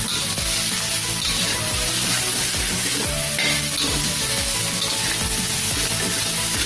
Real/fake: real